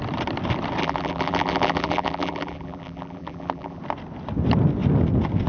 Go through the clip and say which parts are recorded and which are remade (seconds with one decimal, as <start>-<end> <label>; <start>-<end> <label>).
0.0-0.8 recorded; 0.8-3.8 remade; 3.8-5.5 recorded